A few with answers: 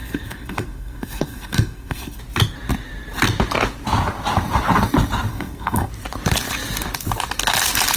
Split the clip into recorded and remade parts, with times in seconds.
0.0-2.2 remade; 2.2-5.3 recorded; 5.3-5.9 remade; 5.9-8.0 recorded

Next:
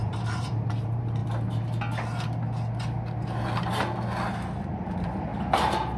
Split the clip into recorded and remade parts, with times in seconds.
0.0-1.2 remade; 1.2-4.8 recorded; 4.8-6.0 remade

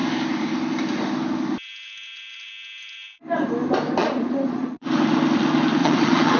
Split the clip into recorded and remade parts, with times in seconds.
0.0-4.0 recorded; 4.0-4.9 remade; 4.9-5.8 recorded; 5.8-6.4 remade

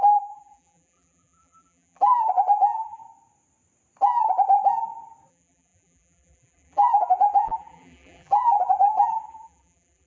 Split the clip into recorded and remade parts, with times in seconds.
0.0-3.0 remade; 3.0-5.3 recorded; 5.3-10.1 remade

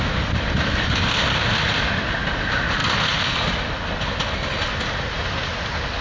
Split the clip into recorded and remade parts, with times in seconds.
0.0-6.0 recorded

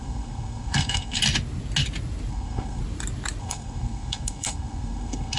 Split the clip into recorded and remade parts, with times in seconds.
0.0-1.2 remade; 1.2-2.3 recorded; 2.3-2.8 remade; 2.8-3.4 recorded; 3.4-5.4 remade

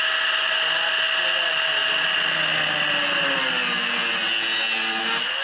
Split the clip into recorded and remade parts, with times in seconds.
0.0-5.4 recorded

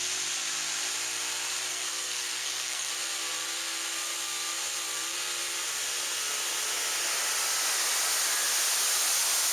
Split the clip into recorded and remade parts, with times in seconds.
0.0-1.7 recorded; 1.7-2.9 remade; 2.9-9.5 recorded